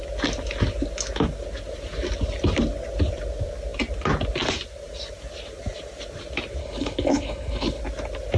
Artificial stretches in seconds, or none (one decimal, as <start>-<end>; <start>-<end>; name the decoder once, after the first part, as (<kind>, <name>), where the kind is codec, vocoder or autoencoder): 6.6-7.8 (codec, HILCodec)